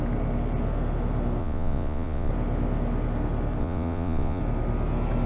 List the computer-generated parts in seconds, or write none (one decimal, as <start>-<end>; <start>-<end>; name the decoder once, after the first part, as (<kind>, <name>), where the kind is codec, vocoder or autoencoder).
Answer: 1.4-2.3 (vocoder, Vocos); 3.6-4.4